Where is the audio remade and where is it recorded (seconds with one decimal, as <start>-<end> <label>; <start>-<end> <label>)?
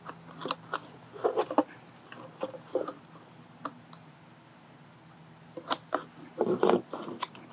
0.0-7.5 recorded